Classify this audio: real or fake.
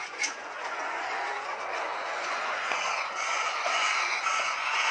fake